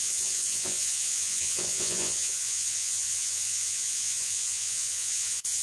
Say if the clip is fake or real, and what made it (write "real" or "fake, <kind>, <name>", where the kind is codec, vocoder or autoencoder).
fake, vocoder, Vocos